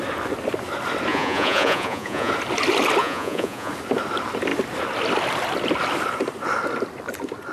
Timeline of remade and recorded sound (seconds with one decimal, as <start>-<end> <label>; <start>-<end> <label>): 0.0-1.1 recorded; 1.1-2.3 remade; 2.3-3.0 recorded; 3.0-3.7 remade; 3.7-7.5 recorded